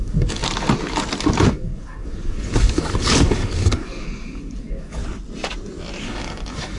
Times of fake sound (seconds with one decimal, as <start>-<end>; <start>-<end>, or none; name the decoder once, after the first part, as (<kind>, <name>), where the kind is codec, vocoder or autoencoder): 0.0-0.4 (codec, DAC); 1.5-5.0; 6.0-6.8